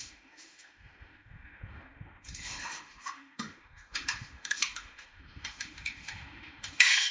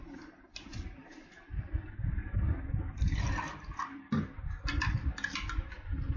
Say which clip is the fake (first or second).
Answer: first